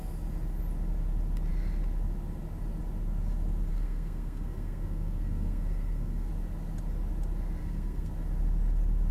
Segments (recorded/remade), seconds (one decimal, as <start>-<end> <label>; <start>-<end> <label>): 0.0-3.7 recorded; 3.7-6.3 remade; 6.3-7.6 recorded; 7.6-8.1 remade; 8.1-9.1 recorded